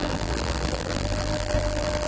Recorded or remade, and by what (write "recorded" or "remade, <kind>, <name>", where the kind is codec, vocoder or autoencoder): remade, vocoder, BigVGAN v2